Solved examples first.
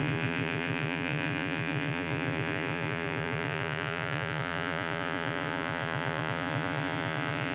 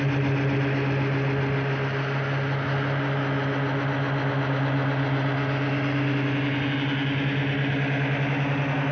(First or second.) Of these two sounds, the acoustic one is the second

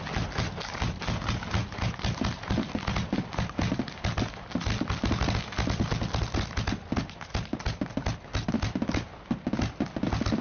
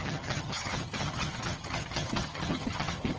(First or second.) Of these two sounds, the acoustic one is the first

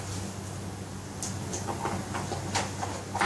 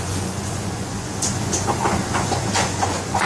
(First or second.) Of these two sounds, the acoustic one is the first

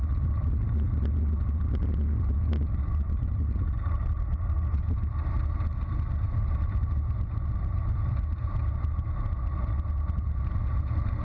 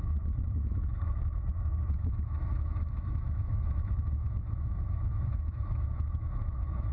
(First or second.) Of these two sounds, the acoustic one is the first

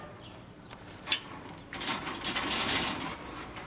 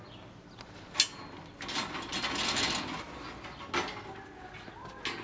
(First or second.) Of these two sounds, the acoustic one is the second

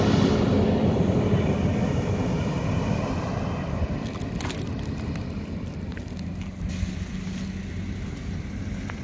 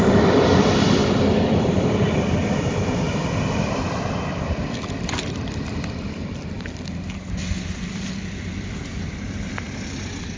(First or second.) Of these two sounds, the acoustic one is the first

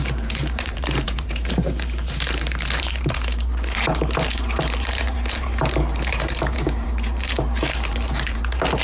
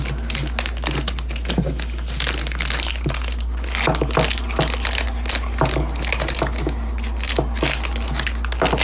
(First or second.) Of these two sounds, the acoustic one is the second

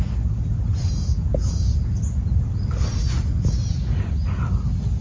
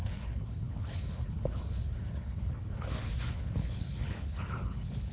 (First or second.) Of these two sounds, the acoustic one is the first